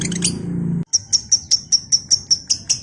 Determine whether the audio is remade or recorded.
recorded